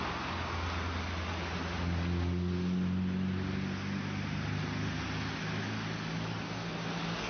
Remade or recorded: recorded